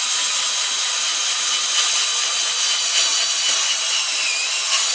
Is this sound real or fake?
real